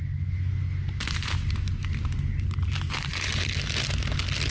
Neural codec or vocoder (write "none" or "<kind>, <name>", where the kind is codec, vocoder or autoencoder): none